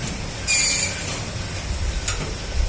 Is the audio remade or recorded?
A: recorded